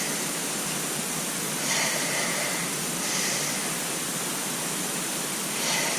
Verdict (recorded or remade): recorded